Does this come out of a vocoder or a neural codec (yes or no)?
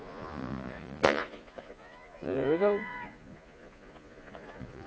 yes